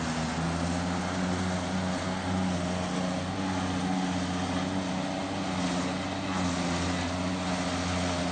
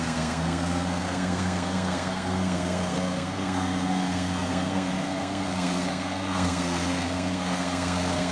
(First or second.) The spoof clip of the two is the second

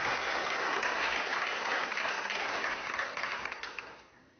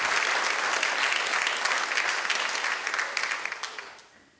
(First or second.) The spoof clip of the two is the first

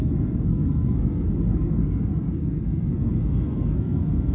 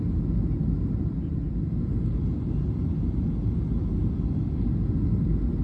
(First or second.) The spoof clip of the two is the first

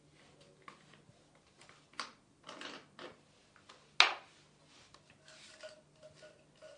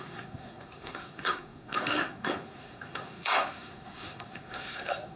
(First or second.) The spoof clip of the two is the second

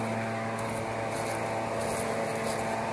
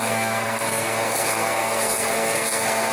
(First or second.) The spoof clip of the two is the second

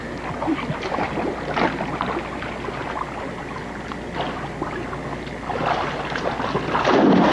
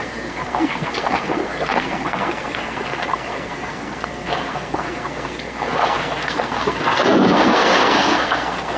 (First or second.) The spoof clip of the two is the second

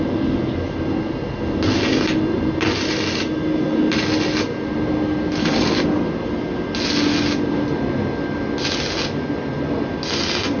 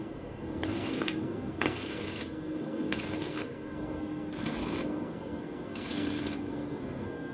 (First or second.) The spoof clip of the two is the second